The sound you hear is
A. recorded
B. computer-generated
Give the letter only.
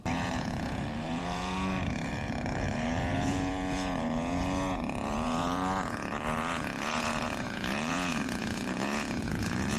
B